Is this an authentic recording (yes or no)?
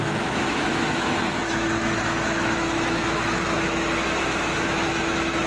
no